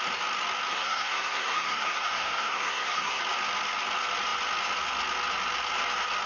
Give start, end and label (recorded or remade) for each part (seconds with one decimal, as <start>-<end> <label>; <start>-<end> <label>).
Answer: 0.0-0.7 recorded; 0.7-3.2 remade; 3.2-6.3 recorded